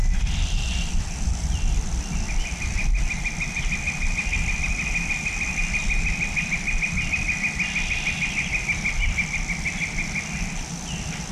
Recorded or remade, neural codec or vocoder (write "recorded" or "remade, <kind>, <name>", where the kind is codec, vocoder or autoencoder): recorded